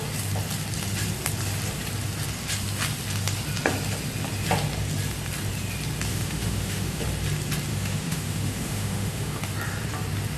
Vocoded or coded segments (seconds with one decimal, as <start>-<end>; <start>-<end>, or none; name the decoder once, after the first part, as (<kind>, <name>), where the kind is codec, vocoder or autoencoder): 6.1-7.0 (autoencoder, DAC-VAE); 7.7-9.4